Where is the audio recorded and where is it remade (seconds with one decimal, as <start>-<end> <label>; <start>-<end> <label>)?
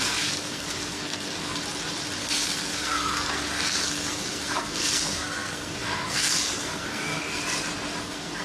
0.0-1.6 remade; 1.6-2.2 recorded; 2.2-7.4 remade; 7.4-8.0 recorded; 8.0-8.4 remade